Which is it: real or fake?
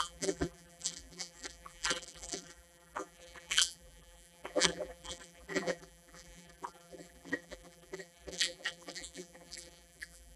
fake